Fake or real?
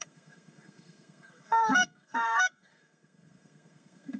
fake